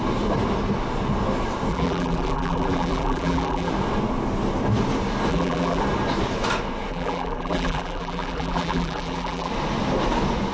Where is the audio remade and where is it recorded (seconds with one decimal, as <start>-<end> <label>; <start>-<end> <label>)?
0.0-1.7 recorded; 1.7-3.7 remade; 3.7-5.3 recorded; 5.3-5.8 remade; 5.8-6.9 recorded; 6.9-9.5 remade; 9.5-10.5 recorded